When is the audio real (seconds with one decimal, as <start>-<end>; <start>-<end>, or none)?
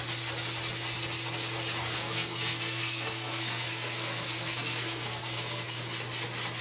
0.0-1.8; 5.8-6.6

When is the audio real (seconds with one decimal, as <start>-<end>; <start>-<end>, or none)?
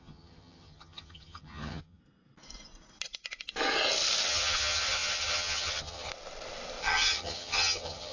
2.0-4.3; 6.1-6.8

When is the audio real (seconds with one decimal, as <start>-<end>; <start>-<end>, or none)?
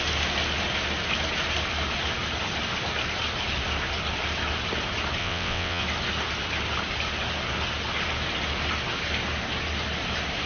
0.0-5.2; 5.8-10.5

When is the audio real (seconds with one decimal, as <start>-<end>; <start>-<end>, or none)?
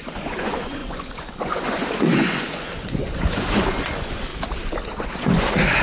4.3-5.0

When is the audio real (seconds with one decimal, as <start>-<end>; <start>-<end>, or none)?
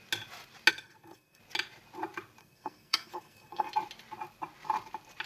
0.0-0.7; 1.4-2.4; 3.7-5.3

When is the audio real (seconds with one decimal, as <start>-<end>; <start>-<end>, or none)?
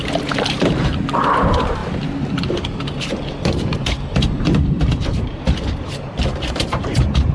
none